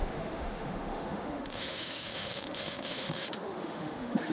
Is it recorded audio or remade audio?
remade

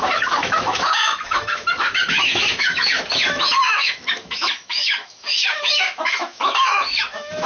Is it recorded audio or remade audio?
remade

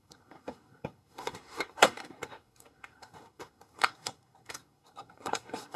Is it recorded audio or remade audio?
remade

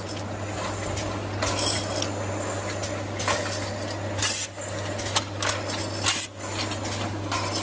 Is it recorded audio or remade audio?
recorded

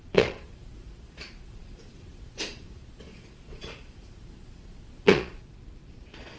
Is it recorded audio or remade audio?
remade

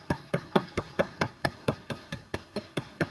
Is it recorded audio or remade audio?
remade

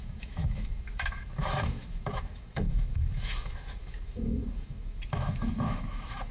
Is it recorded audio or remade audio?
remade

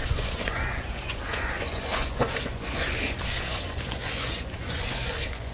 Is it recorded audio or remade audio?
remade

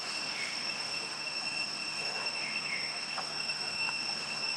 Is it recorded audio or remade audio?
remade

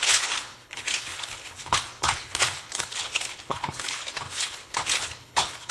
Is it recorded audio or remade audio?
remade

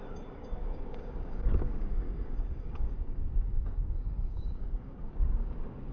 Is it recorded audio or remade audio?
remade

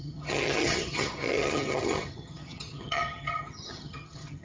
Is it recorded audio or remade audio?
remade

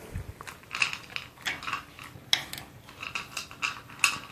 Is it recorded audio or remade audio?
recorded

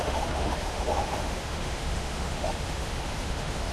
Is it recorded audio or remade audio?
remade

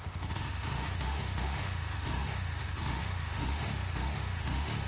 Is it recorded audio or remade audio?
remade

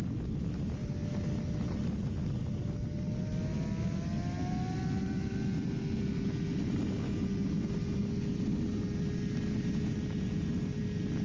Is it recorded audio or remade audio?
recorded